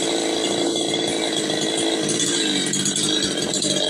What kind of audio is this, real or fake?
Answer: real